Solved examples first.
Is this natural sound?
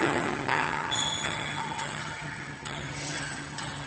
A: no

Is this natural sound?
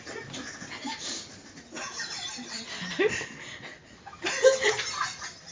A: yes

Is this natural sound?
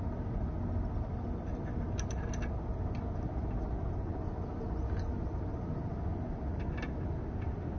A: yes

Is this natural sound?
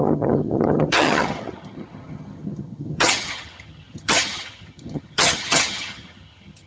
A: no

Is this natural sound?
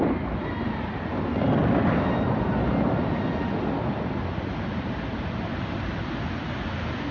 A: yes